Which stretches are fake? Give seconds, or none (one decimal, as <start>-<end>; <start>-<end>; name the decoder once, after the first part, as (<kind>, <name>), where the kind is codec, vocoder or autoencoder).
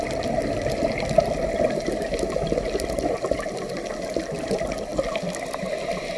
none